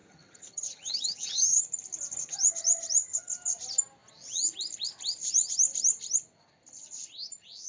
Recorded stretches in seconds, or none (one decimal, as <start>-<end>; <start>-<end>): 1.6-2.2; 3.3-7.7